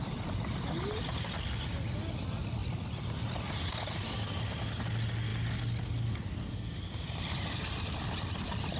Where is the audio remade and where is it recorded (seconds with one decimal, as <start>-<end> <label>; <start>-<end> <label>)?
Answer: 0.0-8.8 recorded